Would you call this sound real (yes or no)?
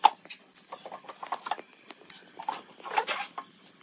yes